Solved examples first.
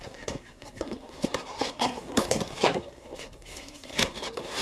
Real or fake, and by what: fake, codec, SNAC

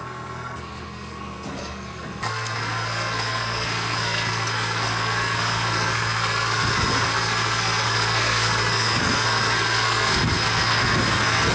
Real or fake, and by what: fake, codec, SNAC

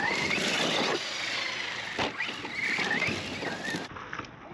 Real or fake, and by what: real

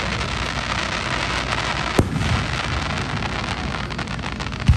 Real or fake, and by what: real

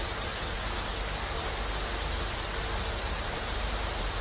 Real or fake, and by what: real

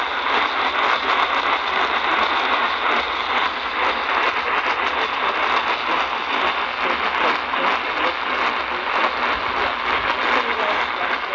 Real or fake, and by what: real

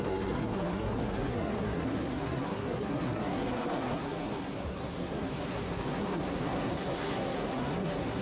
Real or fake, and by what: fake, codec, SNAC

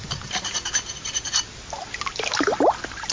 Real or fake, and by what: real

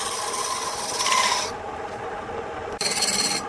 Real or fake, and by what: real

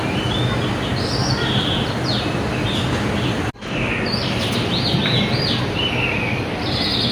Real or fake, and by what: real